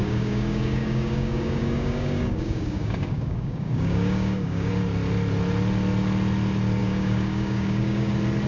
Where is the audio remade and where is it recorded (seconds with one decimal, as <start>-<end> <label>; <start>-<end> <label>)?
0.0-4.7 remade; 4.7-6.8 recorded; 6.8-8.1 remade; 8.1-8.5 recorded